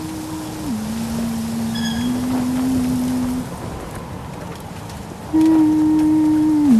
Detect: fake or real real